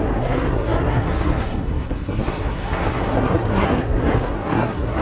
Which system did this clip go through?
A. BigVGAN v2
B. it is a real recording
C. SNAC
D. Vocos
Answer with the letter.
C